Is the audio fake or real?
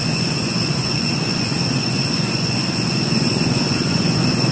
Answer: fake